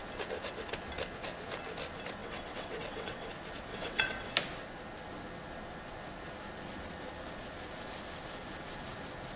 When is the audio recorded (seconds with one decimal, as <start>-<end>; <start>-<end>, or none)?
0.0-2.2; 3.3-3.7; 4.3-9.4